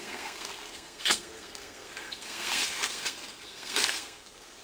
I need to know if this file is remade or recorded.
remade